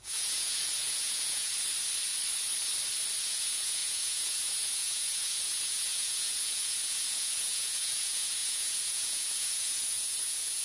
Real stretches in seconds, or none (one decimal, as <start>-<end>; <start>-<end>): 1.5-3.2

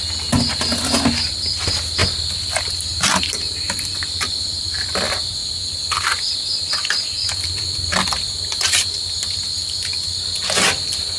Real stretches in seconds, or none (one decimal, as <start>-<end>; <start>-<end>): 0.0-2.0; 3.2-11.2

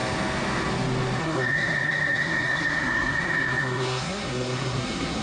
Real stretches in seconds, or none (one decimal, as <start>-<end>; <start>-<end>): 0.0-1.2